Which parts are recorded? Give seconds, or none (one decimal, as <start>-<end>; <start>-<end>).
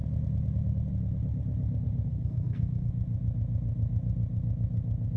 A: 0.0-2.1; 2.9-5.2